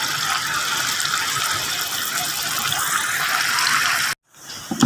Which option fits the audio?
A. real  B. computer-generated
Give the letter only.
A